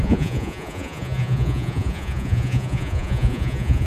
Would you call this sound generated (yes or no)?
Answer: yes